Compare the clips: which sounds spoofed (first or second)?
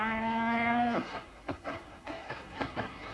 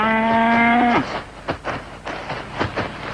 first